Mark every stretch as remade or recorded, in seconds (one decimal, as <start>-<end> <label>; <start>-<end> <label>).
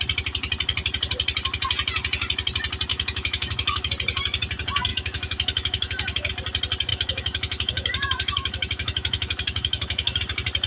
0.0-2.9 recorded; 2.9-3.9 remade; 3.9-4.9 recorded; 4.9-6.3 remade; 6.3-6.9 recorded; 6.9-10.2 remade; 10.2-10.7 recorded